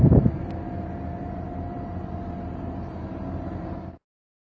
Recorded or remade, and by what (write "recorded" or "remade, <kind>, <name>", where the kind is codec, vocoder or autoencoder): remade, vocoder, BigVGAN v2